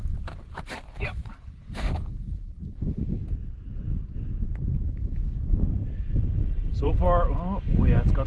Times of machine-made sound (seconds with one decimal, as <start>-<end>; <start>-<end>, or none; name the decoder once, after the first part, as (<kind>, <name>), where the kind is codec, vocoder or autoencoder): 0.0-2.8 (vocoder, BigVGAN v2); 5.8-7.0